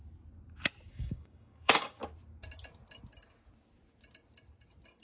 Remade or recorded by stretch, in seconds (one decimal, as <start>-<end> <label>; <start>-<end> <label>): 0.0-0.9 recorded; 0.9-2.0 remade; 2.0-5.0 recorded